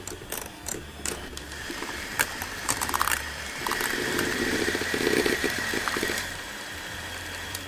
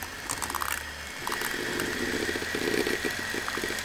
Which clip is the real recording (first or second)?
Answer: second